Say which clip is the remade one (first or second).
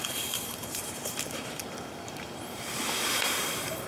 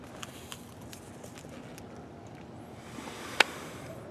first